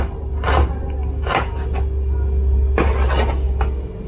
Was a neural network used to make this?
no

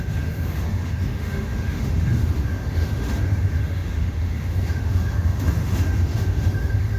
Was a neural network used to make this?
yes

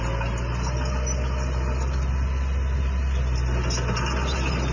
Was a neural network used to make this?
no